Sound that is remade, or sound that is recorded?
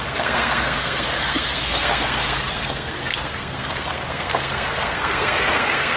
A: remade